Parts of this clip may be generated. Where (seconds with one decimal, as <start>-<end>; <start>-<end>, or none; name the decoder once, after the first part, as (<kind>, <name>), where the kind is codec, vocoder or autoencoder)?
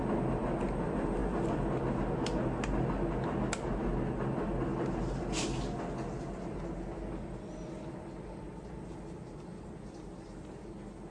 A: none